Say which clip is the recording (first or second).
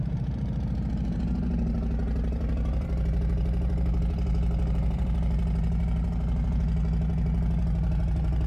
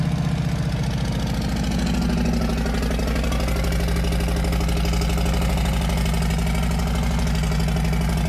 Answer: second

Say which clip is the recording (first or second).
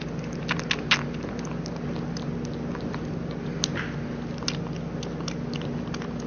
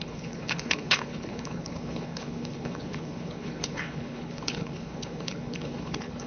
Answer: first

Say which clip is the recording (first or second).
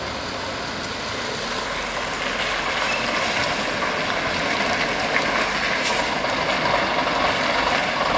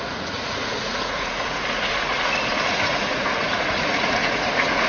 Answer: first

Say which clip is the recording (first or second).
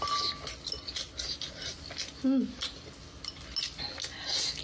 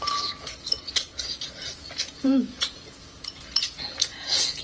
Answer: first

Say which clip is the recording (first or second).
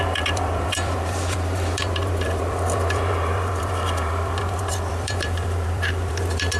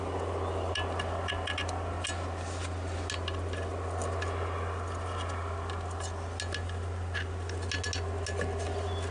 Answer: second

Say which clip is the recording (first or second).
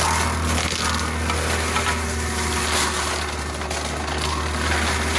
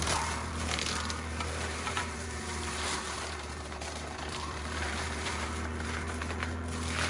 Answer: first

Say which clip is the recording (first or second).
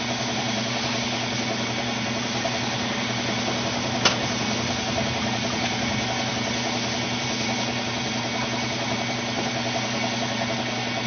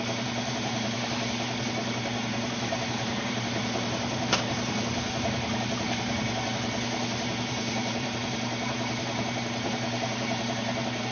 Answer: first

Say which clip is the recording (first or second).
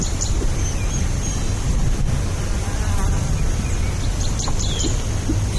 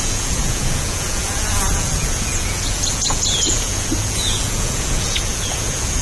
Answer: first